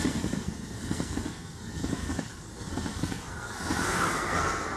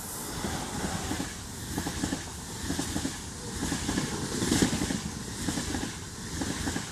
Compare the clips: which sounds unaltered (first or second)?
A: second